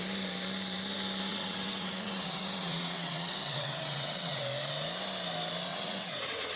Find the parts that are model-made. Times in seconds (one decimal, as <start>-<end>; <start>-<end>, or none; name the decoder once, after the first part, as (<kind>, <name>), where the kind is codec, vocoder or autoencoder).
1.3-4.4 (vocoder, WaveNeXt); 5.7-6.6